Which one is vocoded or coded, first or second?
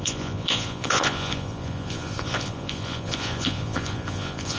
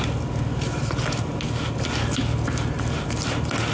first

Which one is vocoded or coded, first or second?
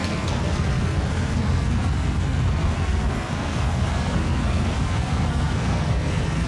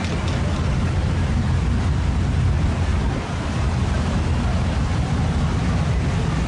first